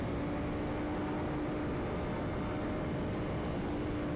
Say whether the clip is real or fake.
real